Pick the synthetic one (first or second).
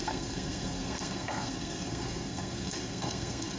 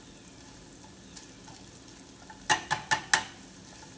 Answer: first